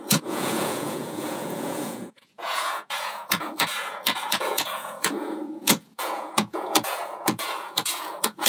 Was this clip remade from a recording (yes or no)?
yes